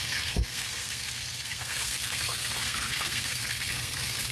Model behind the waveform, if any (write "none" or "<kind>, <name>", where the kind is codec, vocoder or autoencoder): codec, SNAC